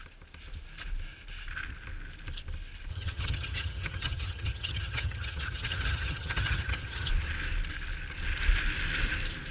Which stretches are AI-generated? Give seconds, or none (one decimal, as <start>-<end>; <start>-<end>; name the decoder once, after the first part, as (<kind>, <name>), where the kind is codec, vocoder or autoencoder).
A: 2.9-7.1 (vocoder, HiFi-GAN)